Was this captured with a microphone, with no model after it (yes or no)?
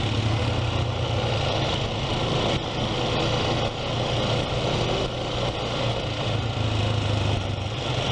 yes